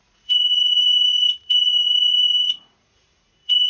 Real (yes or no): no